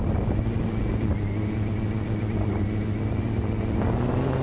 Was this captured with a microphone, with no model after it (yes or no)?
yes